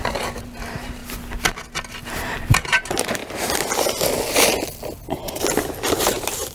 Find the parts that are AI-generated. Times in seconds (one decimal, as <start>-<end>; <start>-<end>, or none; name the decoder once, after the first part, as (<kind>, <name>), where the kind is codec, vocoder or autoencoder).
0.0-1.0 (vocoder, BigVGAN v2); 2.2-3.2; 5.9-6.5